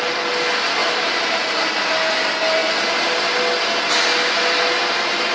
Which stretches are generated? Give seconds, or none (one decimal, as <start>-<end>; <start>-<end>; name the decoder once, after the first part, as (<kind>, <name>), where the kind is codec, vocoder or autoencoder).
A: none

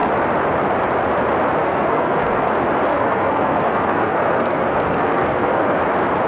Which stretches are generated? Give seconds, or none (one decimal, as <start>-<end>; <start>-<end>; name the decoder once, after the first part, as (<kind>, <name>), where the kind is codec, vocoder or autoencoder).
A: 1.6-2.5 (codec, SNAC); 2.9-5.8

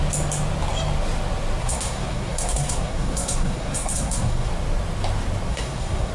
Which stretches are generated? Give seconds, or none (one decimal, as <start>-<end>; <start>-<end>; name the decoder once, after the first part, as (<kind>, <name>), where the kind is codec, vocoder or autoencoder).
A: 1.6-4.5 (codec, SNAC); 5.5-6.1